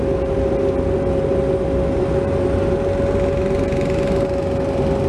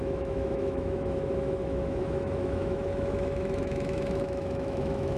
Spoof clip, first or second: second